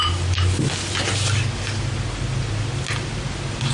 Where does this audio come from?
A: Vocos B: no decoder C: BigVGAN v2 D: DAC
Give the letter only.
B